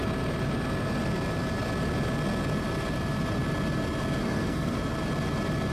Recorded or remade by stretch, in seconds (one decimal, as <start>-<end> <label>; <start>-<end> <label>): 0.0-4.2 recorded; 4.2-4.8 remade; 4.8-5.7 recorded

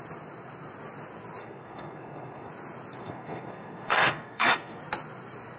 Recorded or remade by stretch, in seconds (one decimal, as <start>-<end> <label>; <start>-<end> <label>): 0.0-1.4 recorded; 1.4-2.5 remade; 2.5-3.0 recorded; 3.0-4.8 remade; 4.8-5.6 recorded

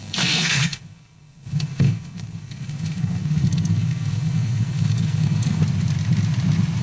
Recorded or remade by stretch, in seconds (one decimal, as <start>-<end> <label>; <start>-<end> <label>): 0.0-5.6 remade; 5.6-6.8 recorded

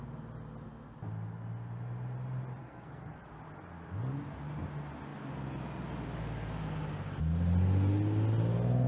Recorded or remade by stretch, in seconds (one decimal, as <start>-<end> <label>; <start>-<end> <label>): 0.0-2.6 recorded; 2.6-3.3 remade; 3.3-8.9 recorded

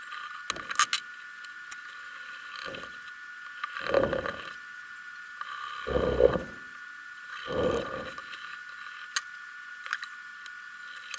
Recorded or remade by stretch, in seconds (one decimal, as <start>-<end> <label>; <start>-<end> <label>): 0.0-11.2 recorded

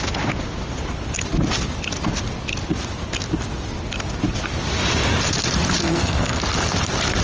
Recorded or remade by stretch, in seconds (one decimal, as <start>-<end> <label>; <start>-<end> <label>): 0.0-5.8 recorded; 5.8-6.4 remade; 6.4-7.2 recorded

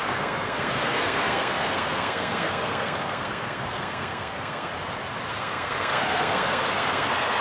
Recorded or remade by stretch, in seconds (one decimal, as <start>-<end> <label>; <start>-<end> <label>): 0.0-4.7 remade; 4.7-5.3 recorded; 5.3-7.4 remade

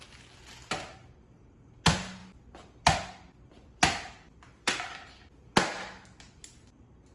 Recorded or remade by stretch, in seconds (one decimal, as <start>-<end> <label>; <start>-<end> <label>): 0.0-7.1 recorded